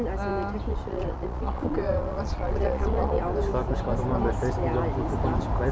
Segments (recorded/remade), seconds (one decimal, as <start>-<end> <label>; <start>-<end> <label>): 0.0-0.7 recorded; 0.7-3.2 remade; 3.2-5.7 recorded